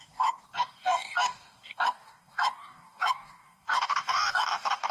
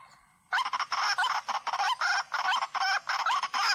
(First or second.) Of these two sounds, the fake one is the first